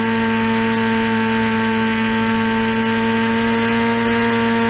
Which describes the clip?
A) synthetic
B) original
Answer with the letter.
B